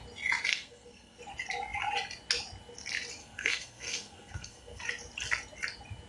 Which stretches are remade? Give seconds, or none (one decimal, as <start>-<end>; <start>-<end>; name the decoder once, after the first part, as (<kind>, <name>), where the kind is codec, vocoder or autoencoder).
0.5-1.2 (codec, SNAC); 3.2-4.8

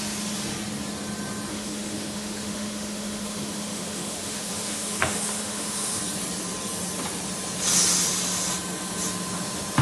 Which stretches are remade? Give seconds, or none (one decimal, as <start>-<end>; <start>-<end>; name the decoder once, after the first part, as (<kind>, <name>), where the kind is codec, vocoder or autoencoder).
1.5-6.0 (autoencoder, DAC-VAE)

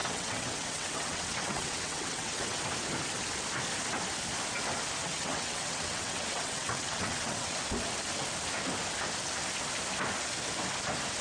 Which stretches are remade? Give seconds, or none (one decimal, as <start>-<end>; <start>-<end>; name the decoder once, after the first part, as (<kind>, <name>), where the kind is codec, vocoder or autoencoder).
0.0-2.6 (vocoder, WaveNeXt); 5.0-7.6

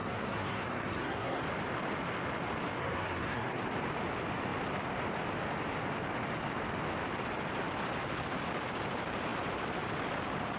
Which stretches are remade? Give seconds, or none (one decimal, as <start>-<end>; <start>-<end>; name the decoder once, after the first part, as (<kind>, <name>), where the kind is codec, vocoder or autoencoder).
0.0-1.4 (codec, SNAC); 2.8-3.6

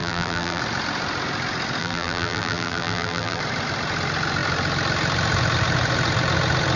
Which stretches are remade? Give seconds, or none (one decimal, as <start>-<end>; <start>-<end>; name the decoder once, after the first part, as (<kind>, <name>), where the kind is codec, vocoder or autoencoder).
0.0-0.6 (vocoder, BigVGAN v2); 1.8-3.4

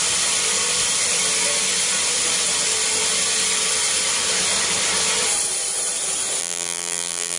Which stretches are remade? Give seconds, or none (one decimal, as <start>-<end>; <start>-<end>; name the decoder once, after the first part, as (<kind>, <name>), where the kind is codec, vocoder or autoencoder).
6.4-7.4 (vocoder, BigVGAN v2)

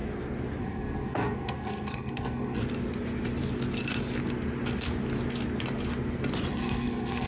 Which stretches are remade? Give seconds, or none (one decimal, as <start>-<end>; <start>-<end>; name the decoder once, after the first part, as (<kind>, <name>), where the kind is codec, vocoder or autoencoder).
0.6-2.6 (codec, SNAC); 6.5-7.3